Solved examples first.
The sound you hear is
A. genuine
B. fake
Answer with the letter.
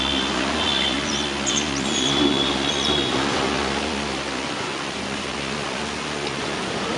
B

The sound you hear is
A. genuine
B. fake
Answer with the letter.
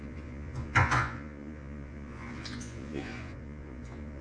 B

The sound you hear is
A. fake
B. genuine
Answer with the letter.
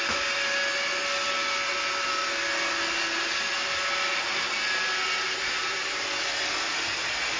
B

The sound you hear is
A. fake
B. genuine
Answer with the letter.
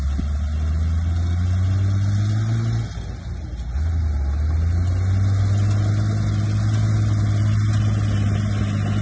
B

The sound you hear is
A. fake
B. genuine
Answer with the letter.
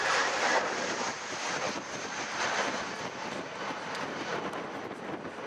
B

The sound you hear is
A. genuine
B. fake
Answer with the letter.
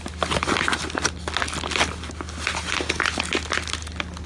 A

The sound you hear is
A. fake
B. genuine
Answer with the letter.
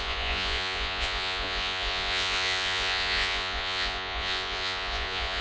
A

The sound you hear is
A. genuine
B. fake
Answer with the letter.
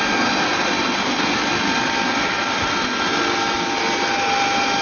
A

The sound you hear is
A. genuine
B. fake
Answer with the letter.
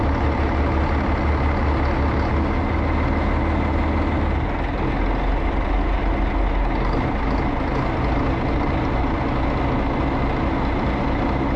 A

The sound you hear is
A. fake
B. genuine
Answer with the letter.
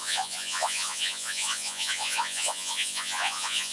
A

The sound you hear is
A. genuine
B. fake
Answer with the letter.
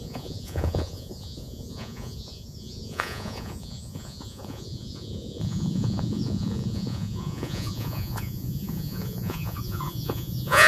B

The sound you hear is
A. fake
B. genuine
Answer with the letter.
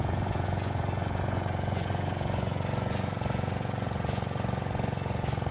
A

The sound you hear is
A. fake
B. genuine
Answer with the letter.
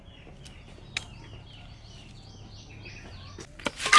B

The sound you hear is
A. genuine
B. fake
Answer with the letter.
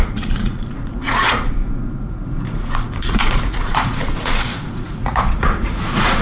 B